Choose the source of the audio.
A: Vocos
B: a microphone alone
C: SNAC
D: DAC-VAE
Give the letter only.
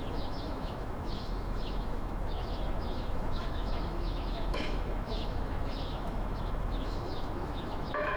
D